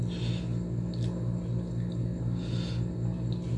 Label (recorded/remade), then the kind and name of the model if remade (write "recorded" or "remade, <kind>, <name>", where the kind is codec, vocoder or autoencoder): recorded